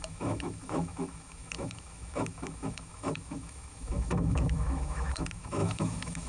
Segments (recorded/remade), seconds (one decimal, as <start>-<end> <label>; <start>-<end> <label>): 0.0-6.3 remade